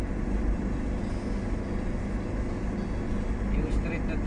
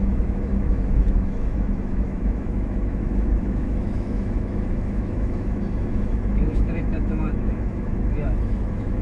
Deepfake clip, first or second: second